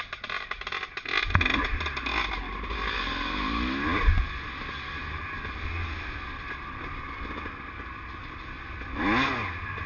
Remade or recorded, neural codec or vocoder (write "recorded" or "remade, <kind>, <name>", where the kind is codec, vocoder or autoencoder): recorded